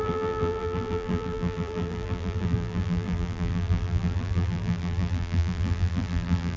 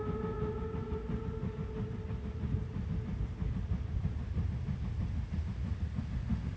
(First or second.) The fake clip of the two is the first